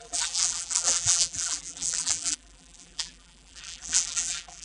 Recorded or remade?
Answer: remade